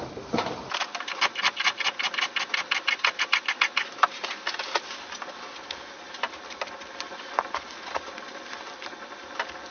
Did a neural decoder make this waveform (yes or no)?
yes